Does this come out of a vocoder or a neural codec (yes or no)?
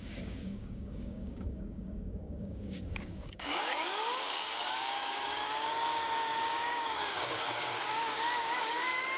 yes